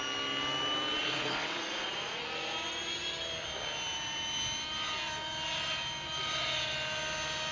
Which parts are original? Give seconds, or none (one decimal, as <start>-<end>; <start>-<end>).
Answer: 0.0-1.0; 2.2-7.5